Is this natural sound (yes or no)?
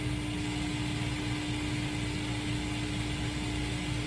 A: yes